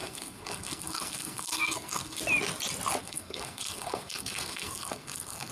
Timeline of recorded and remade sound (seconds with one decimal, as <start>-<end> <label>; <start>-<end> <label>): 0.0-2.2 remade; 2.2-3.0 recorded; 3.0-5.5 remade

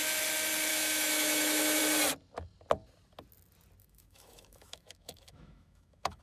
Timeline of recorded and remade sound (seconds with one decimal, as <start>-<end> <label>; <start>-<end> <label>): 0.0-0.7 recorded; 0.7-1.8 remade; 1.8-3.8 recorded; 3.8-6.2 remade

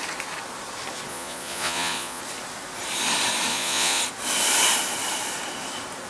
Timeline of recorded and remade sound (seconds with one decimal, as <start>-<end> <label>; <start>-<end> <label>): 0.0-1.1 recorded; 1.1-2.2 remade; 2.2-3.5 recorded; 3.5-4.0 remade; 4.0-6.1 recorded

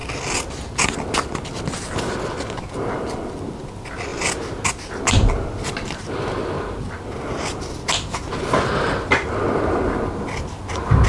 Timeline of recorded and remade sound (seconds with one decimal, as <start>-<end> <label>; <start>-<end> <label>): 0.0-11.1 recorded

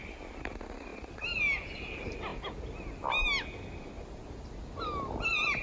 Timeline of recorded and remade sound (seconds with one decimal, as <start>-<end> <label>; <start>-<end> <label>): 0.0-5.6 recorded